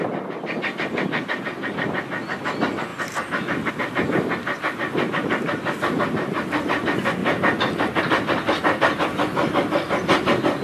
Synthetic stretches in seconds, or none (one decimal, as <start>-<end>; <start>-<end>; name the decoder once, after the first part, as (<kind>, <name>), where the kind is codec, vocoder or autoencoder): none